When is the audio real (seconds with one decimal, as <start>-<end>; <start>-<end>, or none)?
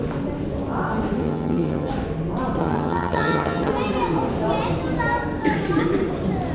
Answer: 0.0-1.2; 1.9-2.6; 3.7-6.5